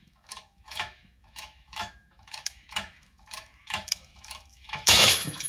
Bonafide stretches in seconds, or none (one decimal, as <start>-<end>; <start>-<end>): none